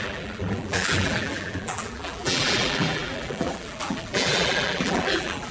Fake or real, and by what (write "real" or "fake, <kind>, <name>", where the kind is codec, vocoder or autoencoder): fake, vocoder, BigVGAN v2